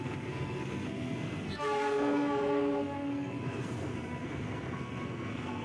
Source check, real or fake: fake